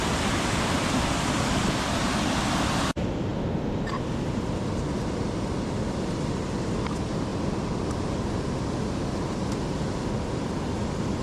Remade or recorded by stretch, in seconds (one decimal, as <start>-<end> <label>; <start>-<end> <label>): 0.0-11.2 recorded